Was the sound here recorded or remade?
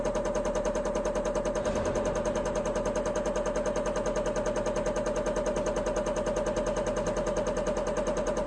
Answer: recorded